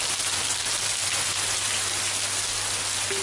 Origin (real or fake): real